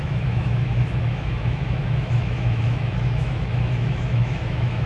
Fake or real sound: fake